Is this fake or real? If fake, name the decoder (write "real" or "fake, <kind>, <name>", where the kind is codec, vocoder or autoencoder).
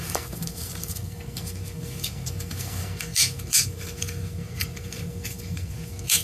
fake, codec, SNAC